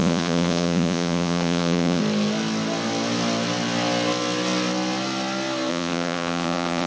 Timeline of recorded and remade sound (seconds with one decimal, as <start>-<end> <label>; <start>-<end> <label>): 0.0-2.0 remade; 2.0-5.7 recorded; 5.7-6.9 remade